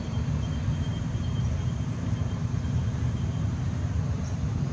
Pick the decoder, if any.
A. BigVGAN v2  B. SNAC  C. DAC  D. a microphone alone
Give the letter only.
A